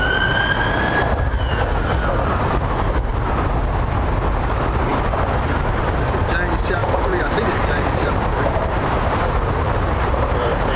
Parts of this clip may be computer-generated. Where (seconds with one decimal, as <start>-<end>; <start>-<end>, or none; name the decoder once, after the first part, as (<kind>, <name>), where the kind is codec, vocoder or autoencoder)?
6.8-10.8 (vocoder, BigVGAN v2)